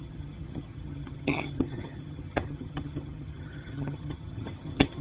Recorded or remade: remade